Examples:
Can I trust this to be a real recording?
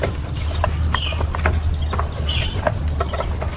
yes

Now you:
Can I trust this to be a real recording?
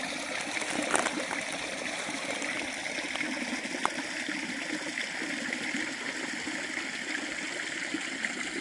yes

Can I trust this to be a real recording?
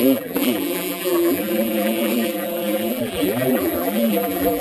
no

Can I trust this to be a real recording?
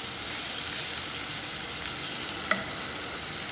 yes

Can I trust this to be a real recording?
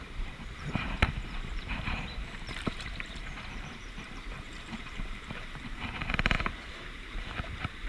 no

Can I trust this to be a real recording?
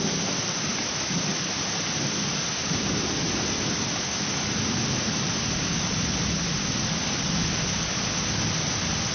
yes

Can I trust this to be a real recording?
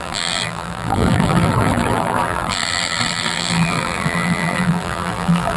no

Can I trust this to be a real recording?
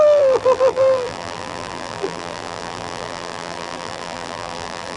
no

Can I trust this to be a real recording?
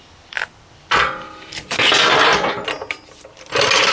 yes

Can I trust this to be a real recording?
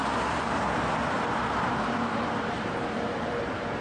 no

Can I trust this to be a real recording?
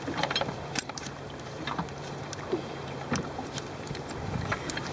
no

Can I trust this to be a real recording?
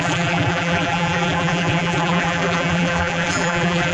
no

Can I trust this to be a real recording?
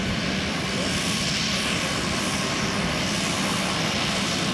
no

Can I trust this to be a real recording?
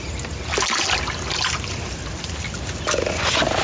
yes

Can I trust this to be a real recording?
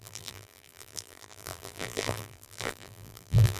no